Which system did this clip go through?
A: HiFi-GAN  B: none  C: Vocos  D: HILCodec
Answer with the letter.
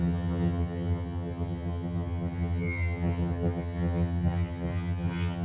A